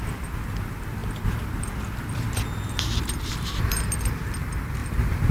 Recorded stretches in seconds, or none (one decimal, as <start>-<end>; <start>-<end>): 4.8-5.3